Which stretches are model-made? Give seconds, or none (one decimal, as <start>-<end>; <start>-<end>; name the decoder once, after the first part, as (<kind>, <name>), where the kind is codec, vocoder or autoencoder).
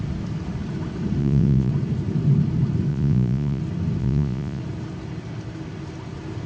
1.2-1.7 (vocoder, Vocos); 2.9-3.6; 4.0-4.6